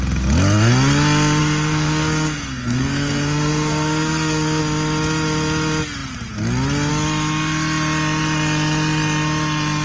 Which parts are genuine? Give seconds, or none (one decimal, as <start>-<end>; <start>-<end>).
0.0-1.4; 4.6-9.8